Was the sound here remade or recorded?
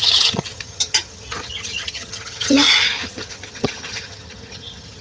remade